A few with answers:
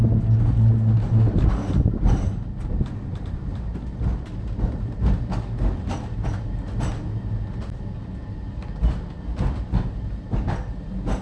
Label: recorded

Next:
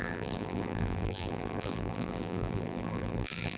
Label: remade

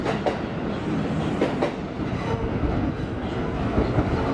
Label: recorded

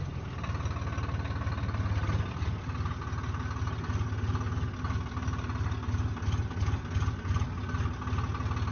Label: recorded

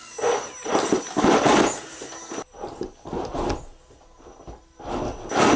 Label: recorded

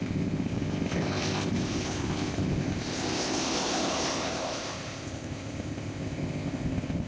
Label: remade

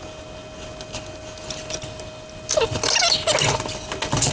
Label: recorded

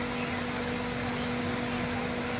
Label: recorded